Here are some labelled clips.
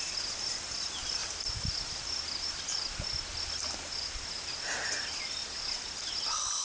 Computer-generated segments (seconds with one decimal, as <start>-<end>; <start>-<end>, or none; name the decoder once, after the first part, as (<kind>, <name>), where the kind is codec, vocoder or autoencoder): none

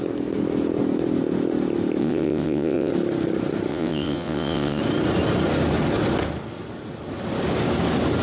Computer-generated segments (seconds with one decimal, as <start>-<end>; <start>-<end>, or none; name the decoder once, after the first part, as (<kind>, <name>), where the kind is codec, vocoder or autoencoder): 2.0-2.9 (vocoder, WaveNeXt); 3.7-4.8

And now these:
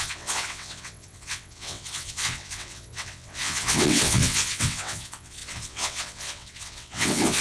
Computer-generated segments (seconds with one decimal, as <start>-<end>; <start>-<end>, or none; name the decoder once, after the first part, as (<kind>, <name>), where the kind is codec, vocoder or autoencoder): 0.0-7.4 (vocoder, WaveNeXt)

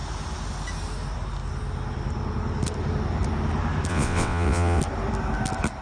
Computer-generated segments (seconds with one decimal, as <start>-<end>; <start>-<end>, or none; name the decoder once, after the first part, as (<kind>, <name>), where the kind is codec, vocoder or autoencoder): 3.9-4.8 (vocoder, WaveNeXt)

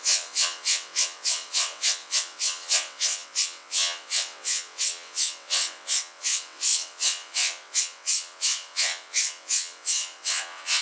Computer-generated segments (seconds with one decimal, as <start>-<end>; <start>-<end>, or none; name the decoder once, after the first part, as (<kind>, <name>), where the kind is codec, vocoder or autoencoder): 0.0-10.8 (vocoder, WaveNeXt)

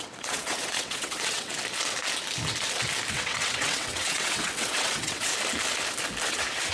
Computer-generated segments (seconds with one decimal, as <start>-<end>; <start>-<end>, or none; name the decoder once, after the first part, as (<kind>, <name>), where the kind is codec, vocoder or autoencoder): 0.0-1.5 (vocoder, WaveNeXt); 3.1-5.3; 6.3-6.7

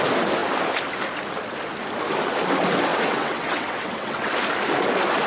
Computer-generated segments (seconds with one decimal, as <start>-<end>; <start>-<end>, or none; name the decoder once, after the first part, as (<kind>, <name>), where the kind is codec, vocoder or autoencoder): 2.9-4.3 (vocoder, WaveNeXt)